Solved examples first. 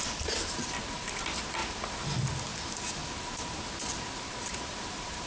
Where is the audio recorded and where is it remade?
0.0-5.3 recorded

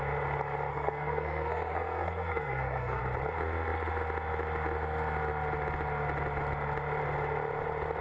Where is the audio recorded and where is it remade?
0.0-0.7 recorded; 0.7-3.0 remade; 3.0-8.0 recorded

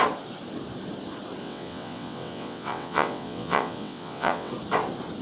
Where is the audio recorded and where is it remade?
0.0-1.4 recorded; 1.4-4.5 remade; 4.5-5.2 recorded

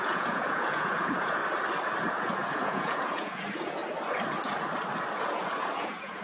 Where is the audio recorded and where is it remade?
0.0-1.4 remade; 1.4-2.1 recorded; 2.1-3.8 remade; 3.8-5.2 recorded; 5.2-6.2 remade

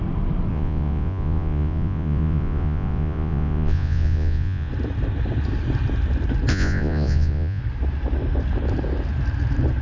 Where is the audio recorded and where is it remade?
0.0-0.5 recorded; 0.5-4.7 remade; 4.7-6.5 recorded; 6.5-7.6 remade; 7.6-9.8 recorded

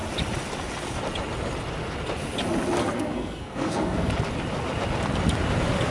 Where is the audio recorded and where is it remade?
0.0-2.8 recorded; 2.8-4.1 remade; 4.1-5.9 recorded